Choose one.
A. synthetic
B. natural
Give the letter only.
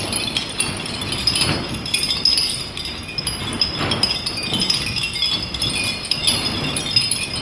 B